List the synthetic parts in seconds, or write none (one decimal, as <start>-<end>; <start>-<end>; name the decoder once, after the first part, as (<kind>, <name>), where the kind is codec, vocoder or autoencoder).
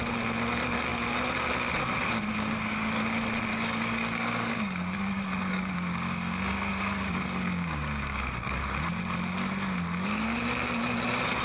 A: 2.3-3.0 (codec, DAC); 3.5-8.6